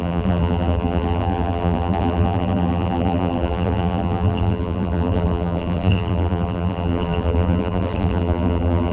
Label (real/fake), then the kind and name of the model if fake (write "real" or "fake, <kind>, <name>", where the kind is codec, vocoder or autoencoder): fake, vocoder, BigVGAN v2